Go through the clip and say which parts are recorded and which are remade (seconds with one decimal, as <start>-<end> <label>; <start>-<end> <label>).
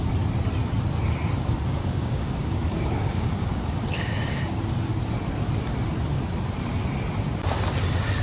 0.0-1.7 recorded; 1.7-4.4 remade; 4.4-8.2 recorded